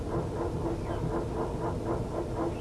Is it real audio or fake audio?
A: real